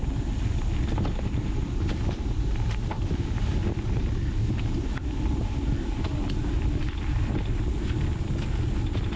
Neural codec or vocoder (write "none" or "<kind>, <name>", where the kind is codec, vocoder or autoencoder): none